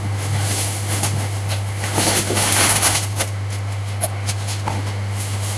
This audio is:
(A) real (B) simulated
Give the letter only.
B